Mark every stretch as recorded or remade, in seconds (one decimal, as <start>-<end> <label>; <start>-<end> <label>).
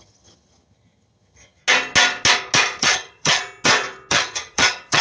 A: 0.0-1.6 remade; 1.6-2.8 recorded; 2.8-3.4 remade; 3.4-4.1 recorded; 4.1-5.0 remade